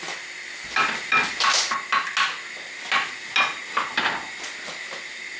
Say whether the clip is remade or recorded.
recorded